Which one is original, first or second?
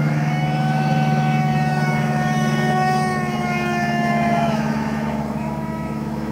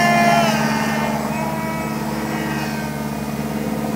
second